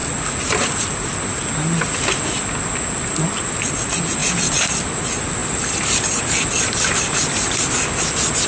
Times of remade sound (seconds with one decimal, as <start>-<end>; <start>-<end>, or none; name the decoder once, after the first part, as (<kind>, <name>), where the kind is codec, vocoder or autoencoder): none